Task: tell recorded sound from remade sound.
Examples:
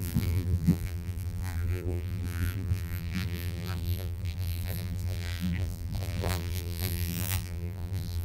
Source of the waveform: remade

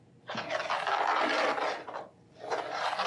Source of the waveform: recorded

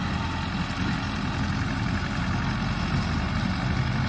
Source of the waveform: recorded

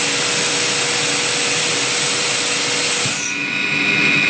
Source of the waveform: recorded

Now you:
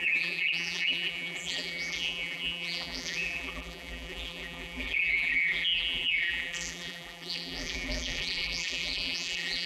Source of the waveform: remade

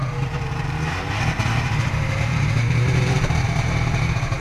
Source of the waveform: remade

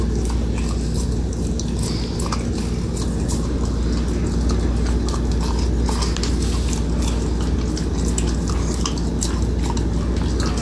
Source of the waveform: recorded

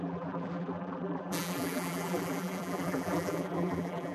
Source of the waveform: remade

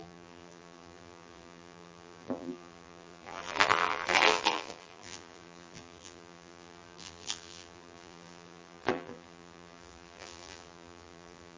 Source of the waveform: remade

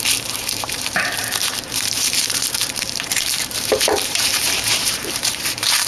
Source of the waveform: remade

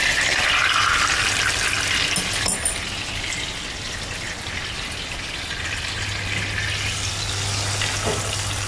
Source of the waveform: recorded